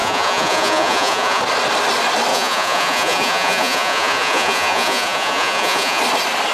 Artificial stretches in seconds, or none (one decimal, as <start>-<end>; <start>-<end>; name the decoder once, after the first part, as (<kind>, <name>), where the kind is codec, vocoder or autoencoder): 0.0-1.4 (vocoder, Vocos); 2.3-6.0